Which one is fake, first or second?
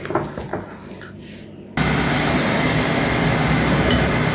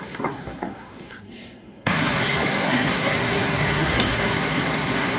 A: second